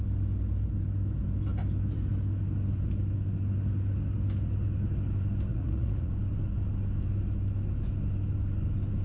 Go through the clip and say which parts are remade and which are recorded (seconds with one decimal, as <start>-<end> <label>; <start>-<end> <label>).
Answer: 0.0-5.5 recorded; 5.5-6.1 remade; 6.1-9.0 recorded